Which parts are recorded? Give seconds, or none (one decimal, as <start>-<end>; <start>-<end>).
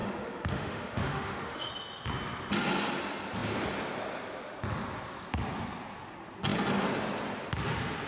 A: 1.7-8.1